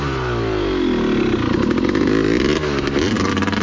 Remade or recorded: recorded